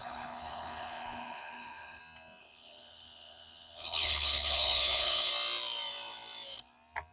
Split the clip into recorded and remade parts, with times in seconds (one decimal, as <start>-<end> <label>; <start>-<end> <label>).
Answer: 0.0-2.0 remade; 2.0-2.4 recorded; 2.4-5.3 remade; 5.3-7.1 recorded